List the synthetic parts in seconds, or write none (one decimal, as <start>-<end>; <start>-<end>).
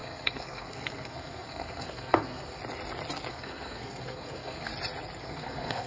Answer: 0.0-2.6; 3.3-4.7; 5.2-5.9